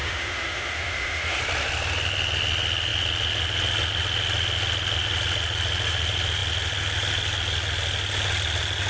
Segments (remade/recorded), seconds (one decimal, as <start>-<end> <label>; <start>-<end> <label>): 0.0-1.4 remade; 1.4-8.9 recorded